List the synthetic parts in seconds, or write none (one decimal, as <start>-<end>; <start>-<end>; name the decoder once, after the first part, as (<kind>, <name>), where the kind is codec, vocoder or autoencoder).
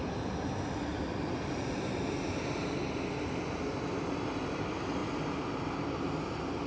0.9-2.2 (vocoder, BigVGAN v2)